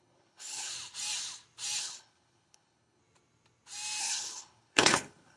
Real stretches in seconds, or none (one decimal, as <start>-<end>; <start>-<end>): 0.7-1.8; 3.0-4.0